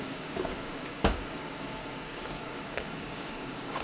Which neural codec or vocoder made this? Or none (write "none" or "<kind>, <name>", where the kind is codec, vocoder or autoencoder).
codec, DAC